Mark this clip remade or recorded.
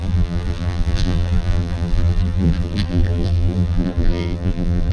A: remade